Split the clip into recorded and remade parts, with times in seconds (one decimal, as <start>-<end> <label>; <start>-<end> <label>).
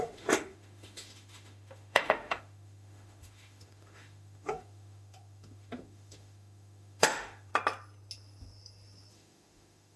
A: 0.0-7.5 remade; 7.5-9.1 recorded; 9.1-10.0 remade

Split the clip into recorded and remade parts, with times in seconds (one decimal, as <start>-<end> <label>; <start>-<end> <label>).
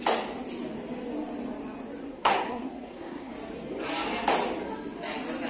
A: 0.0-2.0 recorded; 2.0-3.3 remade; 3.3-5.5 recorded